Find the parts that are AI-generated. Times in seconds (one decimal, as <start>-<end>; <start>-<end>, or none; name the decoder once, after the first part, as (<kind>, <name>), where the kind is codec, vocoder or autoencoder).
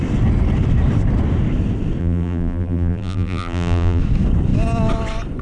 2.0-4.0 (vocoder, BigVGAN v2)